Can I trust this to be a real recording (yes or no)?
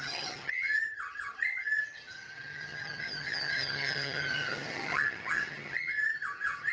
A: no